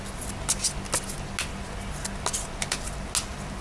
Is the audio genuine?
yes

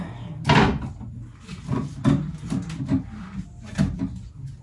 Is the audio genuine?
yes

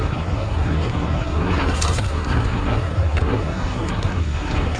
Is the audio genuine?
no